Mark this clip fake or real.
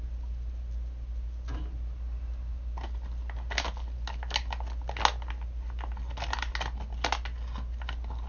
real